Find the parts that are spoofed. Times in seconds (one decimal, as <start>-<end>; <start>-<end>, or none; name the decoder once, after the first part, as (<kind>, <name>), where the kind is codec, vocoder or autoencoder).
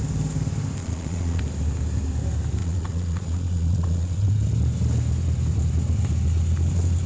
0.8-1.4 (vocoder, Vocos); 2.6-4.3